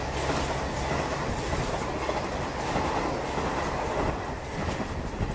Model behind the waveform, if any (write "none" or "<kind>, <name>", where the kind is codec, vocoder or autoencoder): none